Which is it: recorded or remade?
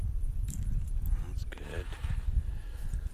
recorded